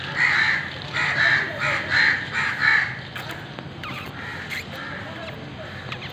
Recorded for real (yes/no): yes